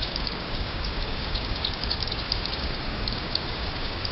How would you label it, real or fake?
fake